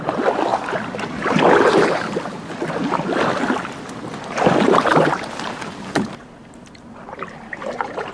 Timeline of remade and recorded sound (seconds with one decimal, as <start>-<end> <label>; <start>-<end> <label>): 0.0-8.1 recorded